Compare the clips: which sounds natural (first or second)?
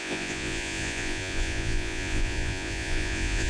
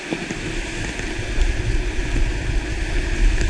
second